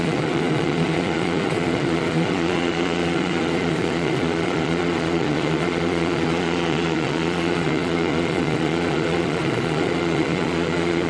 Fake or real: fake